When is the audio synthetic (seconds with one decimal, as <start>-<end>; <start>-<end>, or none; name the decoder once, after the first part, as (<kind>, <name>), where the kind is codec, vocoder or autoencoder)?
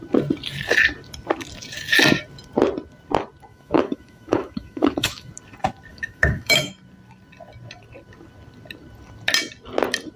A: 3.5-5.3 (autoencoder, DAC-VAE); 5.9-6.7